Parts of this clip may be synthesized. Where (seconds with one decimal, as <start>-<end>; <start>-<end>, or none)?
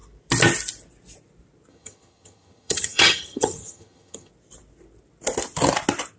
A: 1.7-4.3